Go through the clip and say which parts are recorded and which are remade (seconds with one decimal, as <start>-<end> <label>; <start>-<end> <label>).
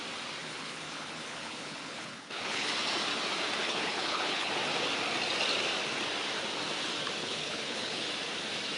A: 0.0-0.4 recorded; 0.4-2.7 remade; 2.7-3.6 recorded; 3.6-4.5 remade; 4.5-7.2 recorded; 7.2-8.1 remade; 8.1-8.8 recorded